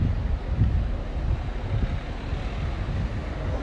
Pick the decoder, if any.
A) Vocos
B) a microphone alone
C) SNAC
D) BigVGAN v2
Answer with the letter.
B